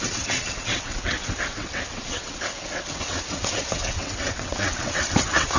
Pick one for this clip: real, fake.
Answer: fake